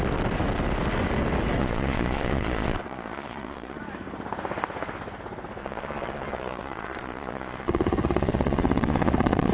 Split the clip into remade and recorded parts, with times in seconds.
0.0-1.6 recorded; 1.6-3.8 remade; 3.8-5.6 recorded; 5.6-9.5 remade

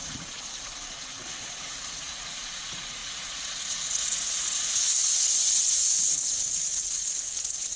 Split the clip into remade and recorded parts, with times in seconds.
0.0-7.8 remade

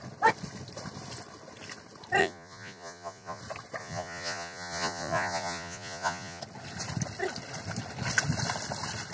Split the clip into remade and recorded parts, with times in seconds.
0.0-2.2 recorded; 2.2-3.4 remade; 3.4-3.8 recorded; 3.8-6.4 remade; 6.4-9.1 recorded

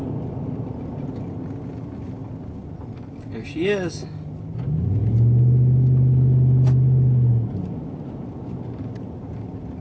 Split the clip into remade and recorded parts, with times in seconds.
0.0-9.8 recorded

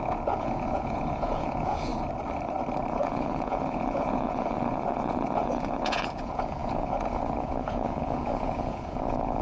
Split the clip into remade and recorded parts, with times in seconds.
0.0-1.9 remade; 1.9-2.9 recorded; 2.9-9.4 remade

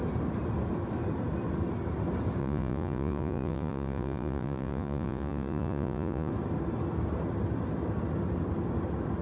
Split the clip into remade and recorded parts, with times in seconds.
0.0-2.4 recorded; 2.4-6.3 remade; 6.3-9.2 recorded

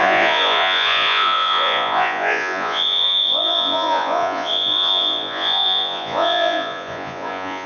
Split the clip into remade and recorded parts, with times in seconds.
0.0-7.7 remade

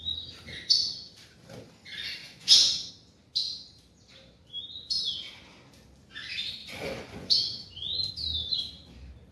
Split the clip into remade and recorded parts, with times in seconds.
0.0-2.2 recorded; 2.2-2.9 remade; 2.9-6.6 recorded; 6.6-8.1 remade; 8.1-9.3 recorded